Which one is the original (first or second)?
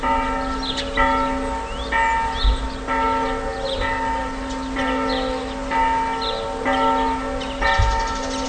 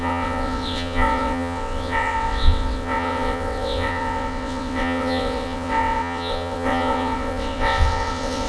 first